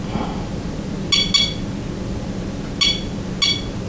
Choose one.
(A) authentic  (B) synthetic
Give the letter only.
A